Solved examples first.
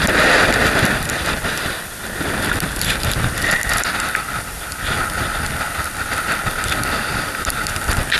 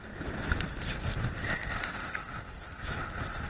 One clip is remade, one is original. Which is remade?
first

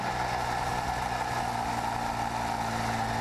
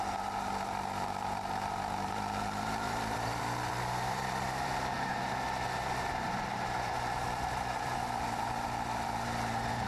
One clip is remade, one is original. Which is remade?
second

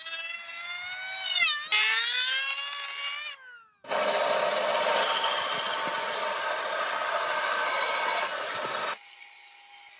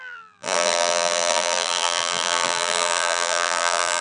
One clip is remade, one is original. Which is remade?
second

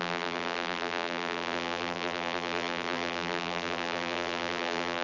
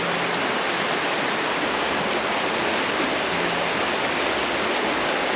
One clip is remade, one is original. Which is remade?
first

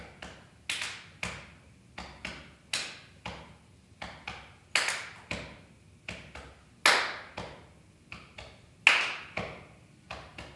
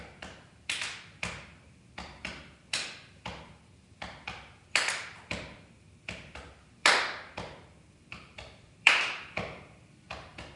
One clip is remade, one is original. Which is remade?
second